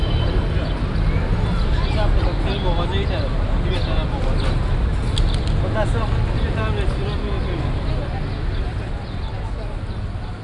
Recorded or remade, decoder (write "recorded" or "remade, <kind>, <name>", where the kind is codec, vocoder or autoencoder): recorded